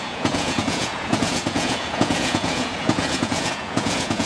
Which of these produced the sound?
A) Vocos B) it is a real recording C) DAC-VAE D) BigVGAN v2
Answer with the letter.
A